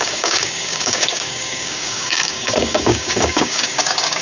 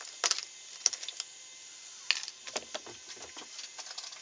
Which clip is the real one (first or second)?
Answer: second